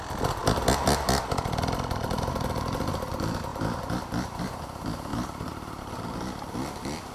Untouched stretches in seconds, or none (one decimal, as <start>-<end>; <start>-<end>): 0.0-3.5; 4.6-5.1; 5.8-7.1